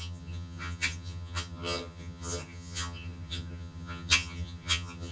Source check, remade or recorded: remade